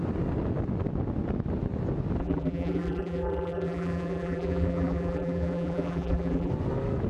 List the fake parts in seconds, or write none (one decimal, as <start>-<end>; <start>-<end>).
2.2-6.5